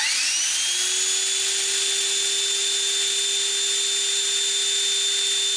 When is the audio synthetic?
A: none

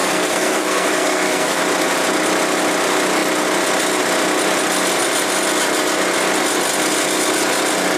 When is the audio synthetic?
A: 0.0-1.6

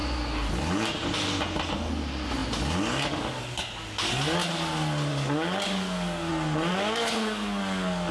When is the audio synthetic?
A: 5.1-6.3; 6.7-8.1

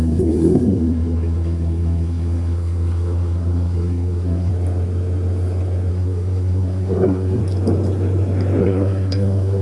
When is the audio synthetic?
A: 0.0-4.5; 5.9-7.4; 8.6-9.6